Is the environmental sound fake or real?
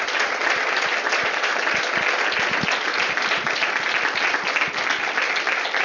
real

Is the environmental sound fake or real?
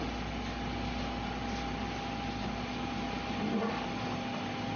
real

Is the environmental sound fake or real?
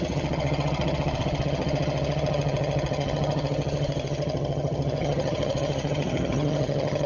fake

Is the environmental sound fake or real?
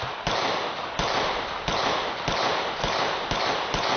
real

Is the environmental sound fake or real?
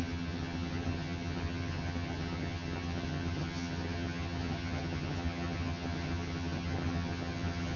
fake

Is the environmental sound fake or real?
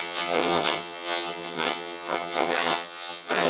fake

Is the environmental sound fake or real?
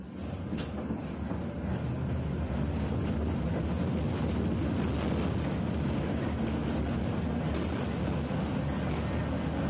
real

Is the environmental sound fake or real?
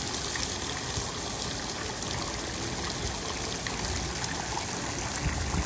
real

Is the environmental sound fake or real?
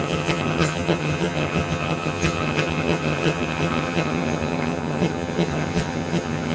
fake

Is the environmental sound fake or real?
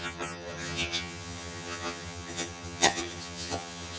fake